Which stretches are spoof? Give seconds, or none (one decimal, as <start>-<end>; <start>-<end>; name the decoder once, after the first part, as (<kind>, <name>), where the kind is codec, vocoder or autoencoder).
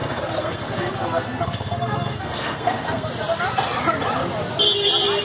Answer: 0.0-3.1 (codec, SNAC)